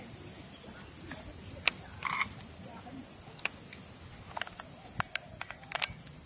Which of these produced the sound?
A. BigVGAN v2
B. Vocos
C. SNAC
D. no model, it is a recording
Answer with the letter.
D